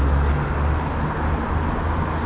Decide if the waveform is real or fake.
real